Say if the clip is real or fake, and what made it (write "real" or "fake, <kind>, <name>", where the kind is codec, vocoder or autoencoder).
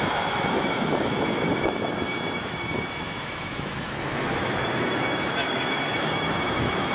fake, autoencoder, DAC-VAE